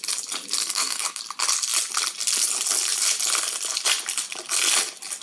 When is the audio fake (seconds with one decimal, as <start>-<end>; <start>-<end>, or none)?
0.6-1.2